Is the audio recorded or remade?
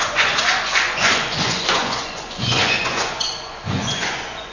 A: remade